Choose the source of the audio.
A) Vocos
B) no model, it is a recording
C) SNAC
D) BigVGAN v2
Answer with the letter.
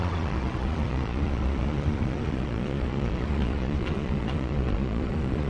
A